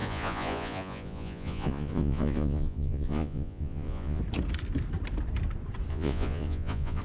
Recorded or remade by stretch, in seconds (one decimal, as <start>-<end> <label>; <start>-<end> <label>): 0.0-4.2 remade; 4.2-5.9 recorded; 5.9-7.0 remade